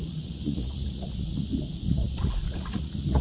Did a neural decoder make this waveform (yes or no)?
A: yes